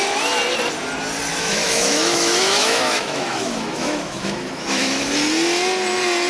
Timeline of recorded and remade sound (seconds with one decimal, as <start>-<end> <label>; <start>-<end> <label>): 0.0-1.3 recorded; 1.3-5.1 remade; 5.1-6.3 recorded